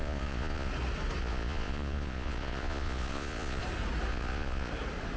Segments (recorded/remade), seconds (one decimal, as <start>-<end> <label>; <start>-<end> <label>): 0.0-0.7 remade; 0.7-1.2 recorded; 1.2-3.6 remade; 3.6-4.1 recorded; 4.1-4.7 remade; 4.7-5.2 recorded